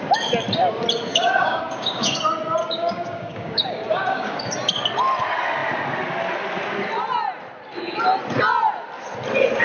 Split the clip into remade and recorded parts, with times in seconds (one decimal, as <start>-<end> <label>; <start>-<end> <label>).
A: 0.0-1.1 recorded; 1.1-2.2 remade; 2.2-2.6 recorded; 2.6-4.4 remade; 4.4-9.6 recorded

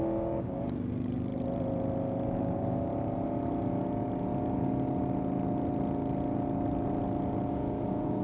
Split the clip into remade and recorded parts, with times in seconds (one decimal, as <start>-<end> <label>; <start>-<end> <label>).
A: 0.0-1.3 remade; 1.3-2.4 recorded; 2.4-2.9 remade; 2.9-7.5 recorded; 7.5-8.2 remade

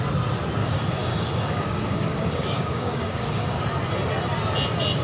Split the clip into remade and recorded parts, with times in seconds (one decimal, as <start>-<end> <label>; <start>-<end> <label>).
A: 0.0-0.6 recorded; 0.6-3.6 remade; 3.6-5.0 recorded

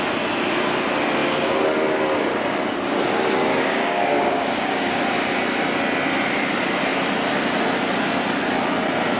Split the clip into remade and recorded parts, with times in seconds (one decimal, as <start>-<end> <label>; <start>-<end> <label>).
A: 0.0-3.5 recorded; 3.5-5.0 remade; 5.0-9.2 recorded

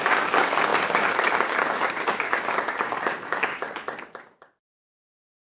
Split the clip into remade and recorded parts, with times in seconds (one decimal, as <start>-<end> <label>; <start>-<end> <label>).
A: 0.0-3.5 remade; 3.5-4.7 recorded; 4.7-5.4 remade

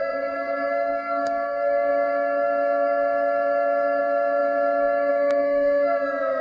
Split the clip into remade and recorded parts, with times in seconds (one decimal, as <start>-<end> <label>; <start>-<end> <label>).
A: 0.0-6.4 remade

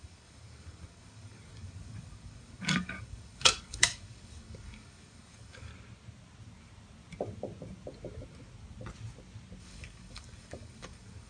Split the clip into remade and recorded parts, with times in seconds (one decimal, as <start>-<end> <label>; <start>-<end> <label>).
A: 0.0-5.7 remade; 5.7-9.6 recorded; 9.6-11.3 remade

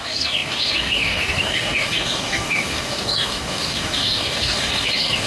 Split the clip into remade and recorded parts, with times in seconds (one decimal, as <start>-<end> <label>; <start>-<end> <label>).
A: 0.0-5.3 remade